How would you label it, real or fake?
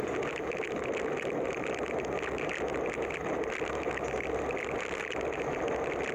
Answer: real